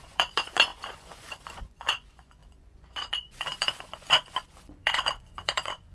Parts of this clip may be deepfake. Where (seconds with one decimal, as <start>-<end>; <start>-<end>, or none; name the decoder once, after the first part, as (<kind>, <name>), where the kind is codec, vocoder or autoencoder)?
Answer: 0.0-5.9 (vocoder, Vocos)